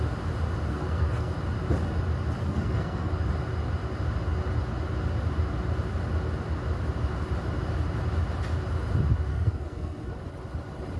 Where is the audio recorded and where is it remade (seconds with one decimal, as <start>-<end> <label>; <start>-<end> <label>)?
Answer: 0.0-0.7 recorded; 0.7-1.3 remade; 1.3-2.4 recorded; 2.4-3.1 remade; 3.1-9.3 recorded; 9.3-10.1 remade; 10.1-11.0 recorded